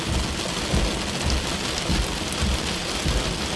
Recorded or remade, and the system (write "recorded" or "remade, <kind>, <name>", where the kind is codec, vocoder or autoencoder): recorded